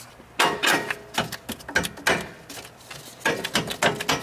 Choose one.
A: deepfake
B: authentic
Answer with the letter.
B